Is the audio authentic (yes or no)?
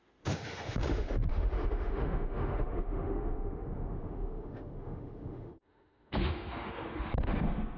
no